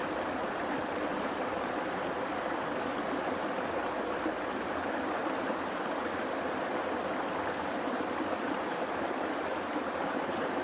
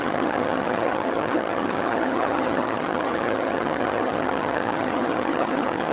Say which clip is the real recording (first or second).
first